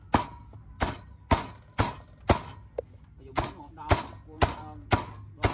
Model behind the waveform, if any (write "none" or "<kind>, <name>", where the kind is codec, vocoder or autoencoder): none